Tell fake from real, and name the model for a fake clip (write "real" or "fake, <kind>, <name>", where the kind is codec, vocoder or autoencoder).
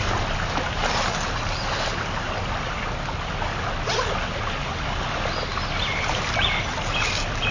real